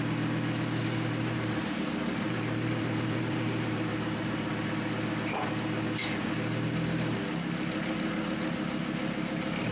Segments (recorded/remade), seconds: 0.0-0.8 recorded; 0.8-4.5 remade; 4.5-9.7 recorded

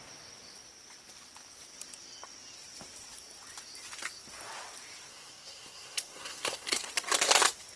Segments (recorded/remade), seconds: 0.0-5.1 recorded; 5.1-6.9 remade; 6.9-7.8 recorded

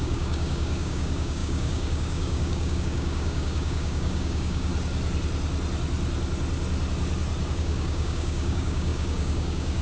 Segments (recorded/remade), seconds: 0.0-4.7 remade; 4.7-7.5 recorded; 7.5-9.8 remade